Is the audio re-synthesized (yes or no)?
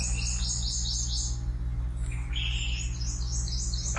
no